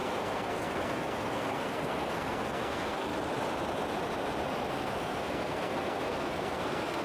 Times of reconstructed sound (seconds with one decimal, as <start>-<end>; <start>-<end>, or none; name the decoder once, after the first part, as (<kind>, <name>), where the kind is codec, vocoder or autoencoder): 0.0-3.1 (codec, SNAC); 4.7-7.0